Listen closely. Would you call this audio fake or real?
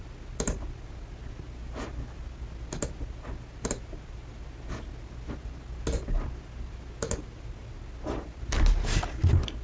real